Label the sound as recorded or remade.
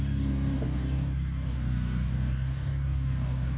remade